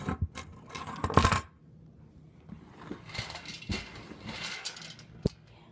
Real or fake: real